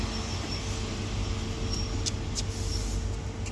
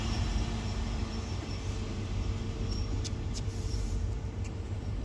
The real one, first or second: first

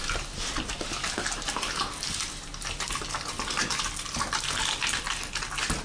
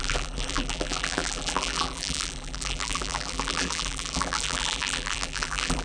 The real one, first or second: first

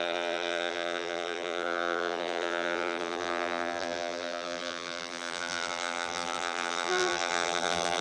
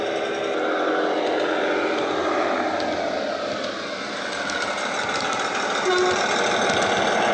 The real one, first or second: second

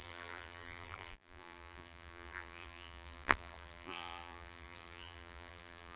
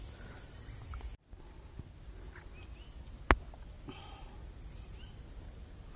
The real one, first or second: second